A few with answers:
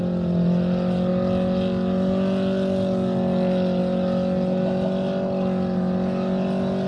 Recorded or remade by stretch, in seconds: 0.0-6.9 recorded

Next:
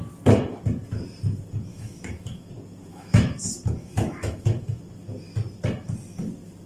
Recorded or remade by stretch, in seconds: 0.0-1.7 recorded; 1.7-2.5 remade; 2.5-2.9 recorded; 2.9-3.4 remade; 3.4-3.8 recorded; 3.8-4.8 remade; 4.8-6.7 recorded

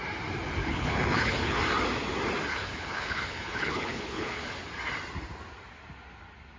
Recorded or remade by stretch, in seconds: 0.0-0.6 recorded; 0.6-1.6 remade; 1.6-2.5 recorded; 2.5-4.5 remade; 4.5-6.6 recorded

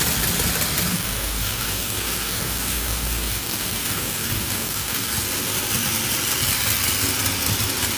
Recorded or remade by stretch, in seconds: 0.0-0.9 recorded; 0.9-5.1 remade; 5.1-8.0 recorded

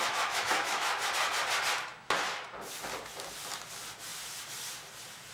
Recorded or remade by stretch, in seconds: 0.0-0.9 remade; 0.9-5.3 recorded

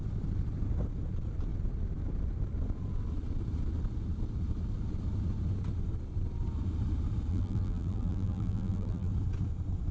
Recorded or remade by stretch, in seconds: 0.0-7.3 recorded; 7.3-9.1 remade; 9.1-9.9 recorded

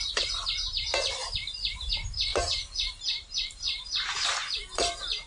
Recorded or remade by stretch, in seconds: 0.0-5.3 remade

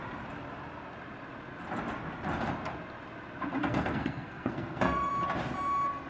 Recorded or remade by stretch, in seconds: 0.0-3.6 recorded; 3.6-5.1 remade; 5.1-6.1 recorded